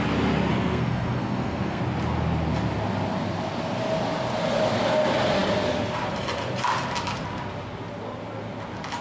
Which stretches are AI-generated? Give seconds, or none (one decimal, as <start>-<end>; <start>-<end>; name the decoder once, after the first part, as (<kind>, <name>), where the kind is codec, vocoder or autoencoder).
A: 0.5-1.8 (codec, SNAC)